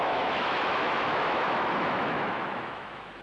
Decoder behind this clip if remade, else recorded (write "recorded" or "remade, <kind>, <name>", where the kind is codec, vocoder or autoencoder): remade, autoencoder, DAC-VAE